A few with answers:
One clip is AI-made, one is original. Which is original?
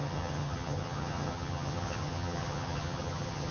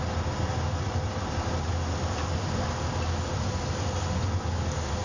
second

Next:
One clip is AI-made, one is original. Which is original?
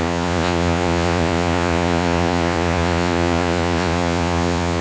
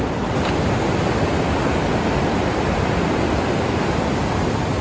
second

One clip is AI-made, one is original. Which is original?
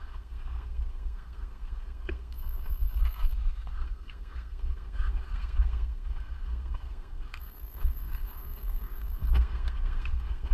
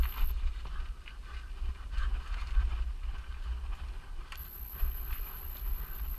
second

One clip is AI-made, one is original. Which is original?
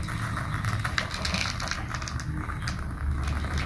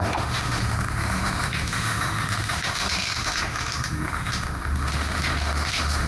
first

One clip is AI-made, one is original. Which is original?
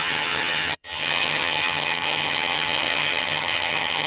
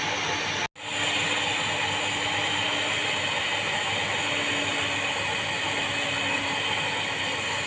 second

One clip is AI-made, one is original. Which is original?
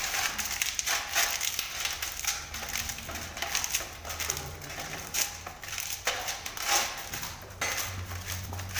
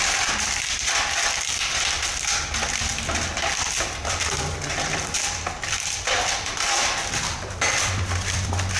first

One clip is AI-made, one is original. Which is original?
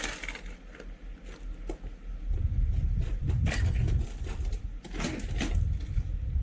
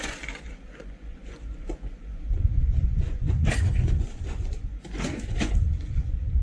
first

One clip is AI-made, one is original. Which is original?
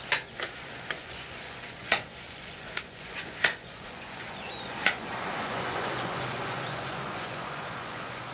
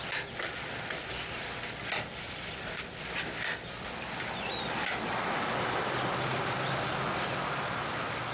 second